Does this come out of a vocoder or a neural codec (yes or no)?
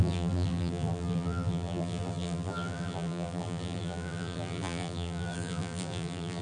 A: yes